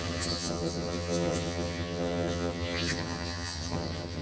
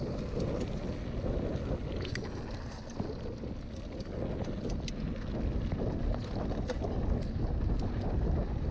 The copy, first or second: first